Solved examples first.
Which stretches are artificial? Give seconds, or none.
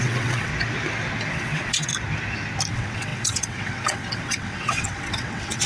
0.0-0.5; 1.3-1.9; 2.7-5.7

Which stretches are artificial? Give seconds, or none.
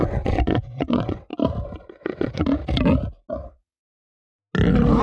0.0-1.3; 1.9-2.6; 3.3-3.8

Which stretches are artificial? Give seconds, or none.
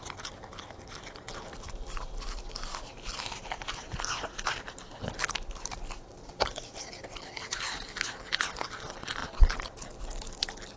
none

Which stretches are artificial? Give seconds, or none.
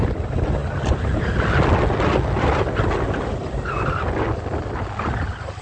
none